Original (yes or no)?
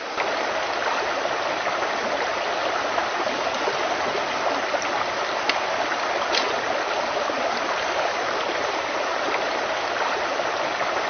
yes